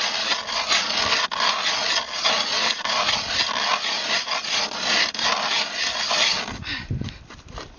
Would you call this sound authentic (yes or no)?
yes